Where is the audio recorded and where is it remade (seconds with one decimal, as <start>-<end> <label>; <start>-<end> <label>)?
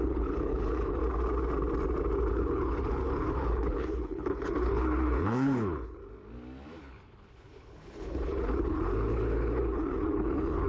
0.0-1.0 remade; 1.0-2.3 recorded; 2.3-6.0 remade; 6.0-6.8 recorded; 6.8-10.7 remade